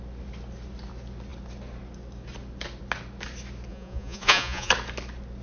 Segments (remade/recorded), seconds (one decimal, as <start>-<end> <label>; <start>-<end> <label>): 0.0-3.7 recorded; 3.7-4.7 remade; 4.7-5.4 recorded